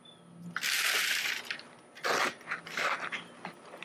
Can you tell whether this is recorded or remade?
recorded